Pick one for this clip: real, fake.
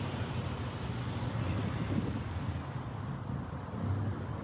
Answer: real